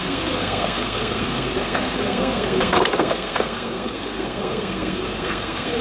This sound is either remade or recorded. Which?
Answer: remade